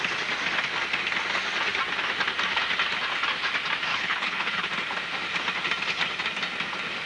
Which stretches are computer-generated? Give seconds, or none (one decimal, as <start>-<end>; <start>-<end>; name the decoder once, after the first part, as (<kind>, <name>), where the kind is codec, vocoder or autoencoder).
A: 3.9-4.7 (codec, HILCodec)